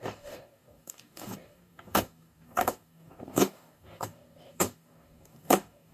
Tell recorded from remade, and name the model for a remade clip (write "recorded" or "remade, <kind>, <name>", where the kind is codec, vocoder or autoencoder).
remade, codec, DAC